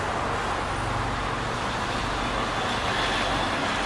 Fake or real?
real